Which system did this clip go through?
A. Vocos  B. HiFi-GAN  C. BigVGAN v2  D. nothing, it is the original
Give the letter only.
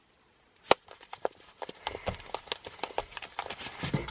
D